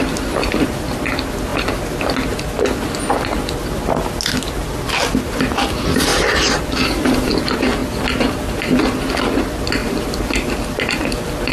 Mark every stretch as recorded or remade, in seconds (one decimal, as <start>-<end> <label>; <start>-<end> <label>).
0.0-9.8 recorded; 9.8-11.0 remade; 11.0-11.5 recorded